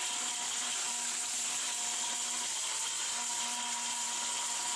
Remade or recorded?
recorded